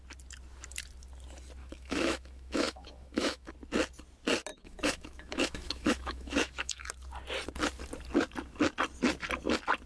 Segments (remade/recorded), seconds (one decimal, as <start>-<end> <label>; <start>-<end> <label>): 0.0-1.6 recorded; 1.6-3.5 remade; 3.5-4.5 recorded; 4.5-6.9 remade; 6.9-9.9 recorded